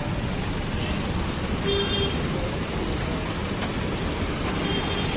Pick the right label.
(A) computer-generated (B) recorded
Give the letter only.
B